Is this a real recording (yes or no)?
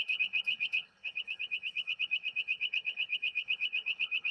no